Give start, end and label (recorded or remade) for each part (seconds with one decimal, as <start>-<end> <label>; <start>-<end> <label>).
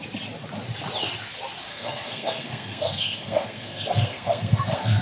0.0-1.7 recorded; 1.7-5.0 remade